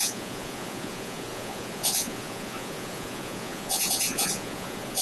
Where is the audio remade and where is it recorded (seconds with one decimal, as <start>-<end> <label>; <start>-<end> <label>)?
0.0-5.0 remade